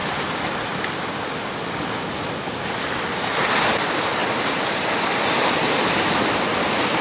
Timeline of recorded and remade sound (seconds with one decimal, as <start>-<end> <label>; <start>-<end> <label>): 0.0-3.6 recorded; 3.6-7.0 remade